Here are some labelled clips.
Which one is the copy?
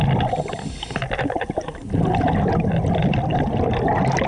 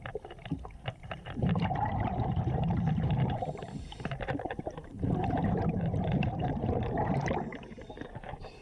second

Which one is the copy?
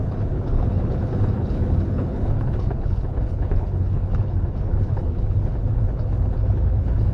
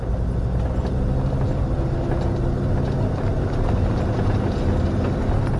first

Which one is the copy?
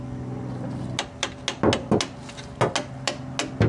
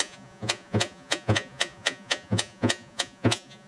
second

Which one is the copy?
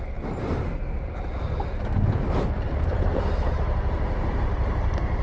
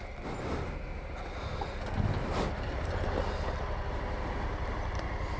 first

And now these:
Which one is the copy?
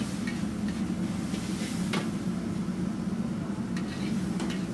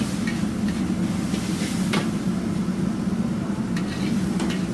second